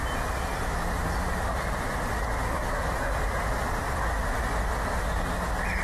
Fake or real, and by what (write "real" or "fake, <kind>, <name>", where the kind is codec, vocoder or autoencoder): real